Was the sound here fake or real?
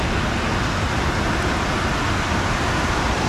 real